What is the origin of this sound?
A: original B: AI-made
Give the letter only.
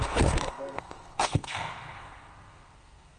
B